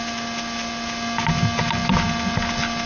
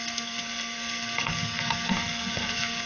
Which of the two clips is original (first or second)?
first